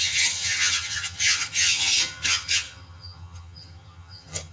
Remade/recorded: remade